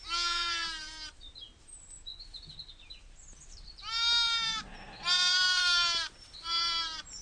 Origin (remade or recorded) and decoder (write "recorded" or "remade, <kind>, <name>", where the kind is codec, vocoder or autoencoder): remade, vocoder, BigVGAN v2